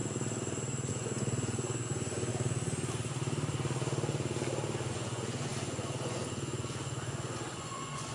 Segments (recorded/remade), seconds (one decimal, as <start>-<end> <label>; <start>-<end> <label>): 0.0-0.9 recorded; 0.9-2.3 remade; 2.3-4.9 recorded; 4.9-8.1 remade